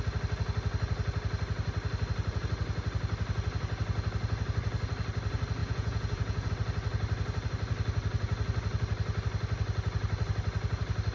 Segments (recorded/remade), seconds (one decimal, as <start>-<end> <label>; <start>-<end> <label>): 0.0-5.6 recorded; 5.6-6.5 remade; 6.5-11.1 recorded

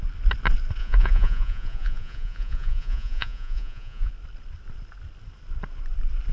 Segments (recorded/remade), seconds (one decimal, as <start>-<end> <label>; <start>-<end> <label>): 0.0-0.8 recorded; 0.8-4.1 remade; 4.1-6.3 recorded

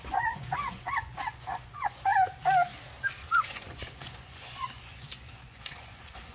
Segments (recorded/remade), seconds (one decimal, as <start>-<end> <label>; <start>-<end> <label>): 0.0-2.1 remade; 2.1-3.2 recorded; 3.2-6.3 remade

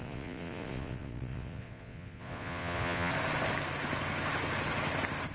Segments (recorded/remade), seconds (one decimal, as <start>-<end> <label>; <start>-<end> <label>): 0.0-3.1 remade; 3.1-5.3 recorded

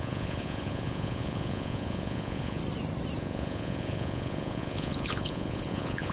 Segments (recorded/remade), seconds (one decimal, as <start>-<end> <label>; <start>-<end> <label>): 0.0-2.6 remade; 2.6-3.2 recorded; 3.2-6.1 remade